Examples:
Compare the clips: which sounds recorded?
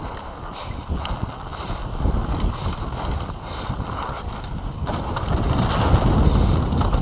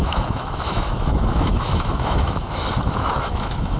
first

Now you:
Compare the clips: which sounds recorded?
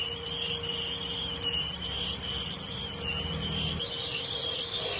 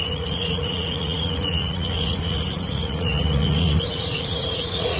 first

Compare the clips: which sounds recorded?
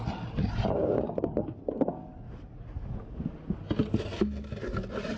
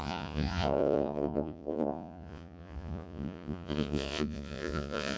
first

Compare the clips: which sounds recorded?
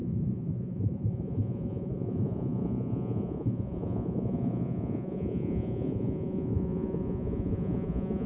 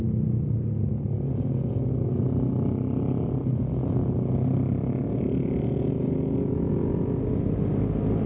second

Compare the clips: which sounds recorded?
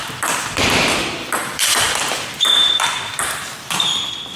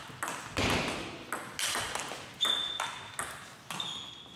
second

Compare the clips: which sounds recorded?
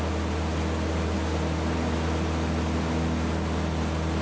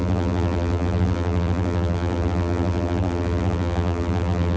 first